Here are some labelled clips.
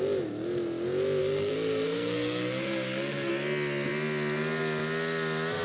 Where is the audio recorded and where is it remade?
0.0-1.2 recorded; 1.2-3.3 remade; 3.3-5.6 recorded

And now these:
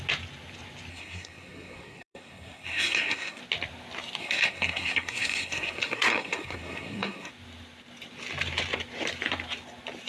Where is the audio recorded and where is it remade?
0.0-0.9 recorded; 0.9-3.4 remade; 3.4-4.2 recorded; 4.2-7.3 remade; 7.3-10.1 recorded

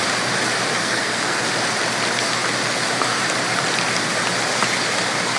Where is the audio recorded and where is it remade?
0.0-0.8 recorded; 0.8-1.4 remade; 1.4-5.4 recorded